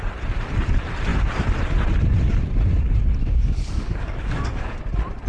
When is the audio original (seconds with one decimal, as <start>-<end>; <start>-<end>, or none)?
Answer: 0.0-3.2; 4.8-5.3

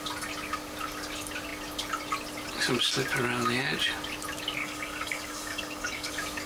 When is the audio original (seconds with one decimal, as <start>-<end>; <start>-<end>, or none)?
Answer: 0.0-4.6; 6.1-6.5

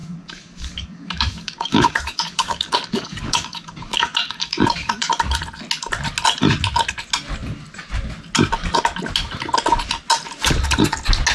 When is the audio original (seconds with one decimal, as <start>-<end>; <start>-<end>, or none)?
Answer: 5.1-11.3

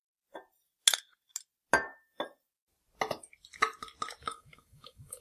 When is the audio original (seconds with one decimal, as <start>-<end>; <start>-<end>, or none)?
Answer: 0.0-4.2